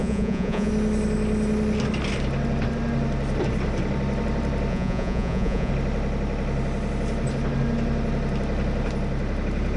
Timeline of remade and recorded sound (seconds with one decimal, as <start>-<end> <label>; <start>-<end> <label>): 0.0-0.7 remade; 0.7-4.7 recorded; 4.7-5.7 remade; 5.7-9.8 recorded